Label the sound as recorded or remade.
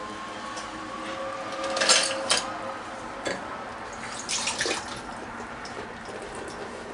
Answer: recorded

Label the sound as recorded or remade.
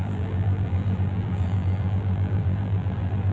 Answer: remade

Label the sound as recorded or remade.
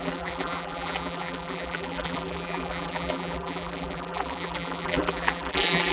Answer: remade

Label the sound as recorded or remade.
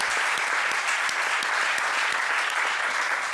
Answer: recorded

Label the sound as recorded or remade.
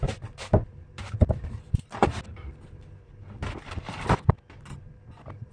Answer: remade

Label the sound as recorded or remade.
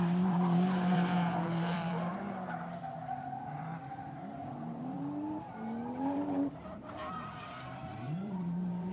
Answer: remade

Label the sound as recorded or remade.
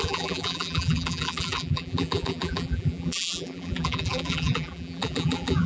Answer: remade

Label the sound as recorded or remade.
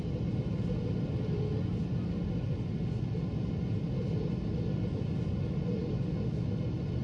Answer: recorded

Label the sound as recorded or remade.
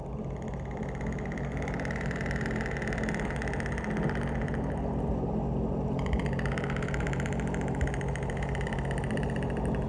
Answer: recorded